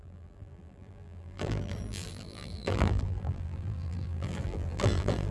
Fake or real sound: fake